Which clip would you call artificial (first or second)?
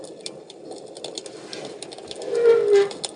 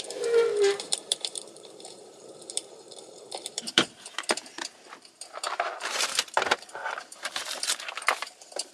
second